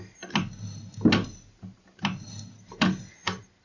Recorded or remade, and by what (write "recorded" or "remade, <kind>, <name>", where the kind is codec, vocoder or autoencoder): recorded